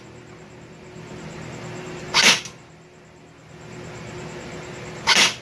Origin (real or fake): real